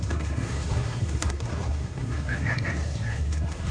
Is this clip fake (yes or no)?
yes